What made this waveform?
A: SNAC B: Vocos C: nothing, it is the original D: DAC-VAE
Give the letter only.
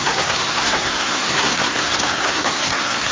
A